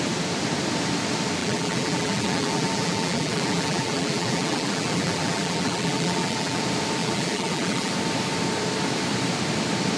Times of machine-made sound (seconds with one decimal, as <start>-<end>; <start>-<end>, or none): 1.4-6.6; 7.0-7.9